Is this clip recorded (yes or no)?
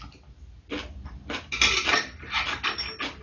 yes